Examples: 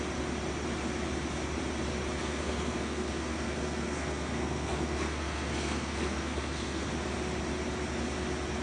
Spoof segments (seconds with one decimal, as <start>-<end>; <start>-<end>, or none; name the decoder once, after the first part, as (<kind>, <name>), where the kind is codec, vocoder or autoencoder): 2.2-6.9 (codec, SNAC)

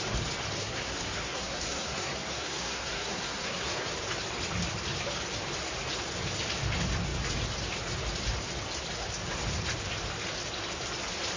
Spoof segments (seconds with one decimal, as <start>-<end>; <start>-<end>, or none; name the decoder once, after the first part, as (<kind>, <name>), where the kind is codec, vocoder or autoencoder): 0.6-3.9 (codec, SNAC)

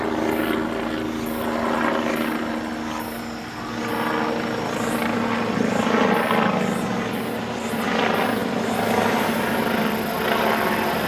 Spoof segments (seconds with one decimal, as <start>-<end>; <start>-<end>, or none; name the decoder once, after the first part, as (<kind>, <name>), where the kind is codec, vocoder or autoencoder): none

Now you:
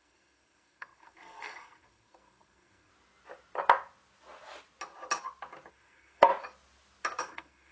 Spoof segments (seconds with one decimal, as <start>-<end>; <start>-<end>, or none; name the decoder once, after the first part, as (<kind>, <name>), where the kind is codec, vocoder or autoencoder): 0.0-2.9 (codec, SNAC); 5.7-6.3; 7.2-7.7

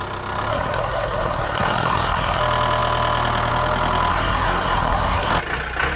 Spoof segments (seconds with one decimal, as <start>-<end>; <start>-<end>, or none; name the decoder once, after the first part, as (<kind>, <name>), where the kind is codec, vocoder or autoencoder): 0.5-2.4 (codec, SNAC); 4.1-5.3

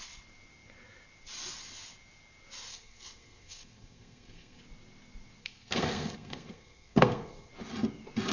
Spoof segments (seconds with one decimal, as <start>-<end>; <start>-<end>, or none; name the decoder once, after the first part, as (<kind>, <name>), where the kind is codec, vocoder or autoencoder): 2.7-4.6 (codec, SNAC); 5.4-7.5